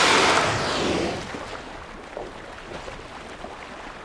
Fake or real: real